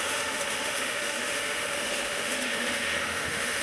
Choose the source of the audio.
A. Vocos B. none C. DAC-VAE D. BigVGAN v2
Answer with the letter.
C